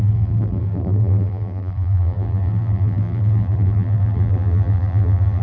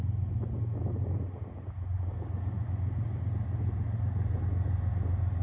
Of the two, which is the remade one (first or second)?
first